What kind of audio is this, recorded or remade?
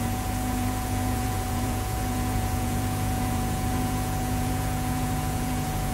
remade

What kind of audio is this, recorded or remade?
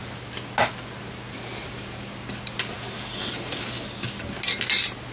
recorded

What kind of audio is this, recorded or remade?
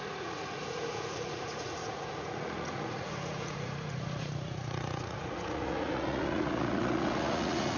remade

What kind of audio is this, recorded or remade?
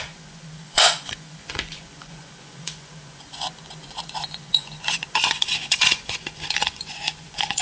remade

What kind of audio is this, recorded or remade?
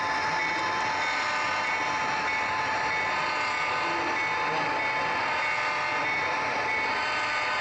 recorded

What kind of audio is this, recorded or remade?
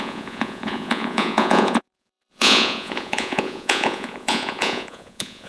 remade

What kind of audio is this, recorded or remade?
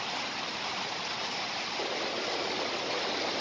recorded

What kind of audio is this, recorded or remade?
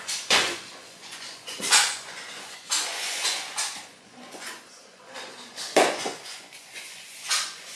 remade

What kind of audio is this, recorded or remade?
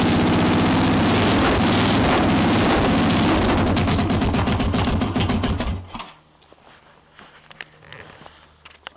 recorded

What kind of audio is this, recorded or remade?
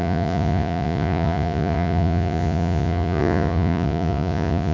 remade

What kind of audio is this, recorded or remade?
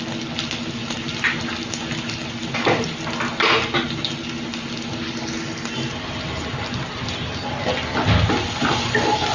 recorded